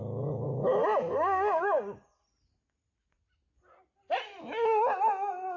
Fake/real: real